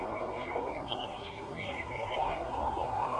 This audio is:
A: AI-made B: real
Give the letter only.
A